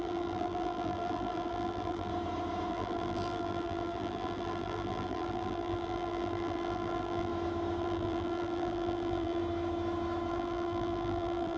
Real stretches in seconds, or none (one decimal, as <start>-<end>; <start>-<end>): 2.1-2.7; 7.3-7.8; 9.4-10.3